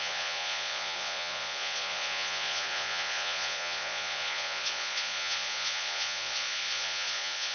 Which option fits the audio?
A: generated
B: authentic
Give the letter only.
A